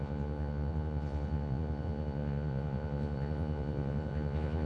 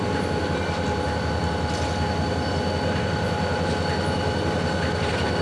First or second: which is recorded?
second